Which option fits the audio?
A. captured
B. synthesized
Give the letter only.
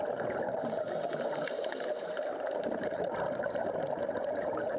B